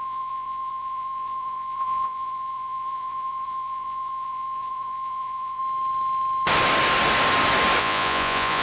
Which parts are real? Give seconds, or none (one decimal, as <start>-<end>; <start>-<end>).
5.6-7.8